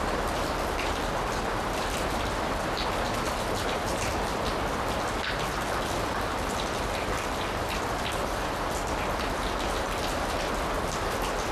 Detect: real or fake real